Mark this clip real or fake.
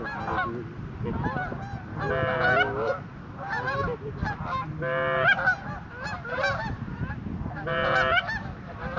real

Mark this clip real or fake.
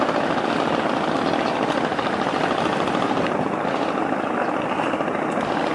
real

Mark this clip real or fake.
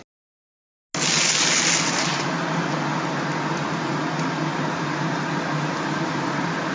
real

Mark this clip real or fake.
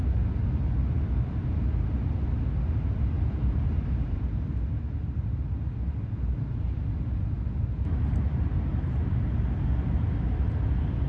real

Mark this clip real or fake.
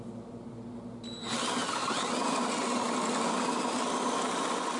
real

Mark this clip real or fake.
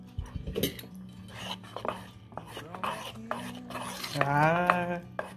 real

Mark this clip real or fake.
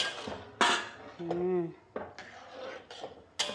real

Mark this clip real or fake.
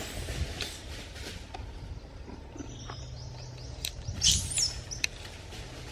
real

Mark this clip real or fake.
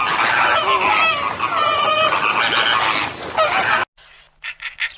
real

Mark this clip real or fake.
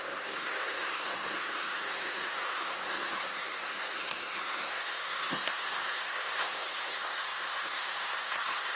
fake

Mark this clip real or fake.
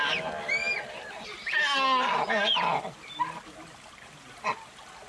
real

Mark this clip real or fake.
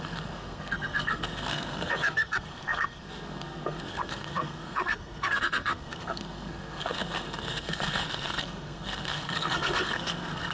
fake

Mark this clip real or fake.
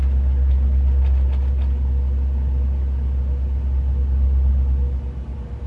real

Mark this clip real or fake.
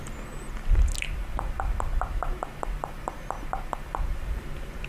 real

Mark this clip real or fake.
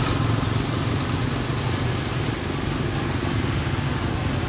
real